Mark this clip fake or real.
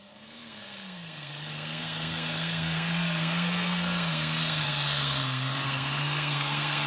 fake